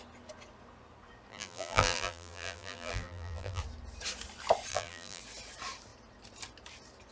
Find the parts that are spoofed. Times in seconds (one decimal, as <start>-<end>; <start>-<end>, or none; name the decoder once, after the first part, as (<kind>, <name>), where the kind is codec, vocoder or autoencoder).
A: 1.3-3.6 (vocoder, BigVGAN v2); 4.7-5.2